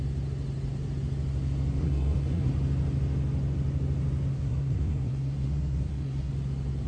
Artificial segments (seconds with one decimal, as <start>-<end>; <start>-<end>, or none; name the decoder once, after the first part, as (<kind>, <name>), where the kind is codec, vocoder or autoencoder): 1.8-2.5 (codec, SNAC); 4.3-6.3